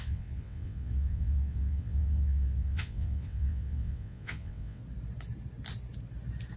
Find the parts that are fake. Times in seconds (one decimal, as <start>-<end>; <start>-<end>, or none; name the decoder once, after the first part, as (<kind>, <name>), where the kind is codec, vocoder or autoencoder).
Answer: 0.0-4.8 (vocoder, WaveNeXt)